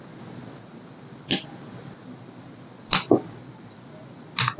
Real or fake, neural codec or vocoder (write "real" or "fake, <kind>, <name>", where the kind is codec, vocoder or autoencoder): real